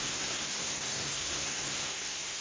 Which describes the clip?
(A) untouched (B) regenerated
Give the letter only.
B